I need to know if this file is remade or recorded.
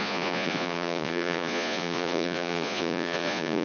remade